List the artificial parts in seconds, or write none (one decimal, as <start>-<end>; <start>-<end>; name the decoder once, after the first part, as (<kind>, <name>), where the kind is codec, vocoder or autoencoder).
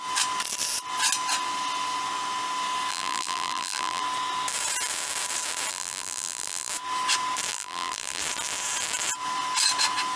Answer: 2.9-4.0 (vocoder, BigVGAN v2); 5.7-6.7; 7.5-8.2